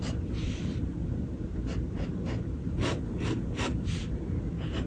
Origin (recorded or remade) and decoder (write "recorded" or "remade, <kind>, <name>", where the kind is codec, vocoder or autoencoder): recorded